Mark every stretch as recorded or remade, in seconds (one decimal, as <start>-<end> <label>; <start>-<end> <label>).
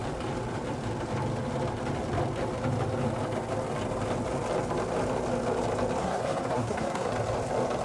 0.0-6.0 recorded; 6.0-7.1 remade; 7.1-7.8 recorded